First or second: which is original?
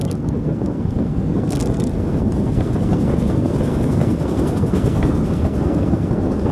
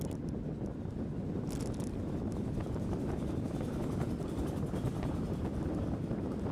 second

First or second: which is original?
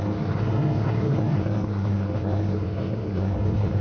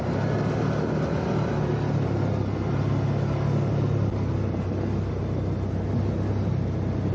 second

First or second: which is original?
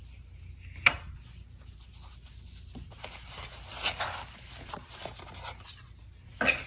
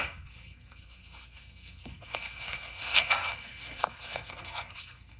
first